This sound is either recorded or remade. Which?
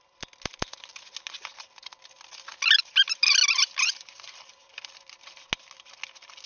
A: recorded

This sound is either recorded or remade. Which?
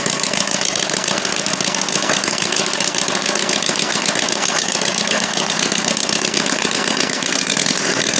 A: remade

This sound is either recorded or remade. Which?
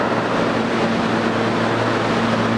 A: recorded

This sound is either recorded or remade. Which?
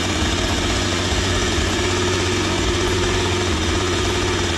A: remade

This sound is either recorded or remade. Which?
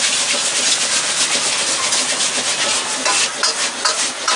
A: recorded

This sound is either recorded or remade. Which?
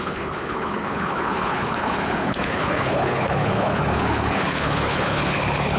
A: remade